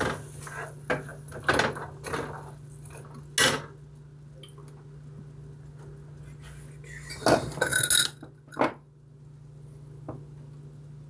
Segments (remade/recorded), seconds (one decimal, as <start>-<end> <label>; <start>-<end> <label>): 0.0-11.1 recorded